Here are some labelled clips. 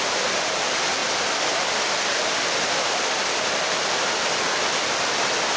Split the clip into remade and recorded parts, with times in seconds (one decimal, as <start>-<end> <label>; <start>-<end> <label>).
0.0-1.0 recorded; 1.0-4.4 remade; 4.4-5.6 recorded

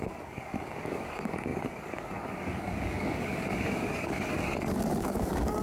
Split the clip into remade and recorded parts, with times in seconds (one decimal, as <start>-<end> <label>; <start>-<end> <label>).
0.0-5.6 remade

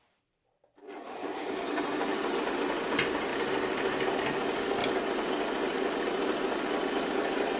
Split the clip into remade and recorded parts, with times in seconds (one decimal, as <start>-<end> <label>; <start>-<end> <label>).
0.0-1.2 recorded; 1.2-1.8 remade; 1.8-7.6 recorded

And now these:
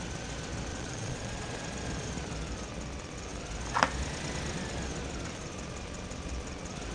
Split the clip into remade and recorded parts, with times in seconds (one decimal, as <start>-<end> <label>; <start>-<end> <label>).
0.0-0.7 recorded; 0.7-1.6 remade; 1.6-6.9 recorded

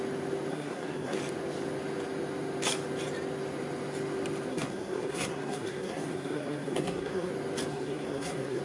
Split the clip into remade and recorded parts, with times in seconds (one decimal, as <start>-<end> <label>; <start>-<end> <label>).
0.0-0.5 recorded; 0.5-1.2 remade; 1.2-4.5 recorded; 4.5-7.3 remade; 7.3-7.7 recorded; 7.7-8.6 remade